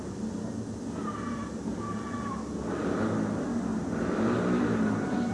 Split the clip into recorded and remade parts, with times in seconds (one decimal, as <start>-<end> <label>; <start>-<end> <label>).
0.0-5.3 recorded